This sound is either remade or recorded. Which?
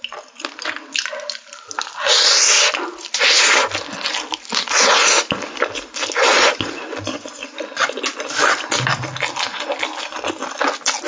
recorded